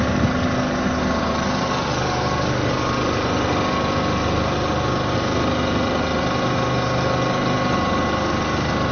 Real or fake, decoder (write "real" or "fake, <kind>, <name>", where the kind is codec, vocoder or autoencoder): real